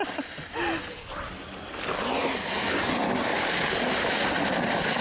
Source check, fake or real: real